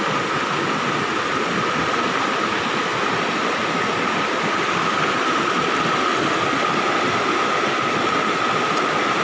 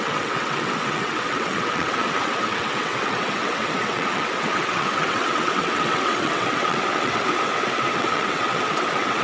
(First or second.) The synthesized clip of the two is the second